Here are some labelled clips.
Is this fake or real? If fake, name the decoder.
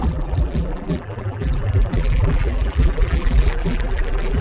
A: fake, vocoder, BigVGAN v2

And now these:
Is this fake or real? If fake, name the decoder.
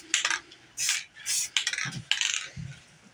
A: real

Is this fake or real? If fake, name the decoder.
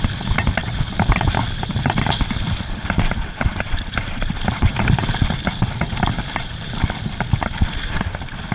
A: fake, vocoder, BigVGAN v2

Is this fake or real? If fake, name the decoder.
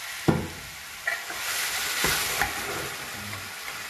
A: real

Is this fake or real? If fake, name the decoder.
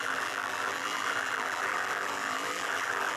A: fake, vocoder, BigVGAN v2